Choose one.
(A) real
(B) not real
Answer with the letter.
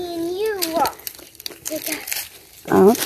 A